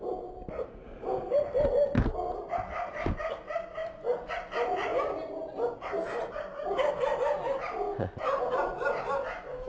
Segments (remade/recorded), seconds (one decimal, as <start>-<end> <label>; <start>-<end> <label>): 0.0-3.8 recorded; 3.8-4.3 remade; 4.3-9.7 recorded